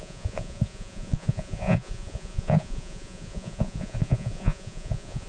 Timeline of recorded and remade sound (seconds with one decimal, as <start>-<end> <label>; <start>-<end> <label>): 0.0-5.3 remade